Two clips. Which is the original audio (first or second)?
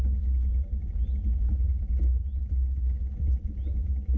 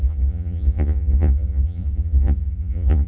first